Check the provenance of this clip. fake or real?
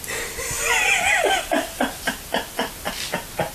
real